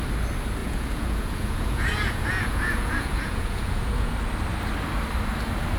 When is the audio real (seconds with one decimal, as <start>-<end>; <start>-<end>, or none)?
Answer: 0.0-0.6; 4.1-5.8